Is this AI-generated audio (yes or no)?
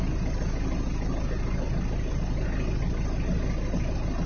no